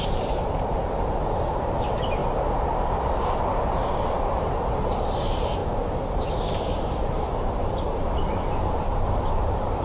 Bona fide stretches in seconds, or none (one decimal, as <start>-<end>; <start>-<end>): none